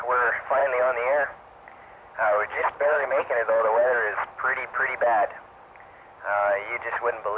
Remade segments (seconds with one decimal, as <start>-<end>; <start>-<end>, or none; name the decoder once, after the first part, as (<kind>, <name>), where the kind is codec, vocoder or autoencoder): 2.5-3.3 (codec, HILCodec)